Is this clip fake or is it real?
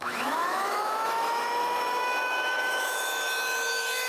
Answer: fake